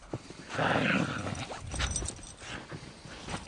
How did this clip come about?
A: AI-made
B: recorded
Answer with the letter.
B